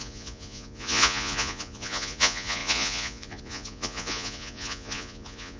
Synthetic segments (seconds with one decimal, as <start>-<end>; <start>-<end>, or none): 0.0-5.6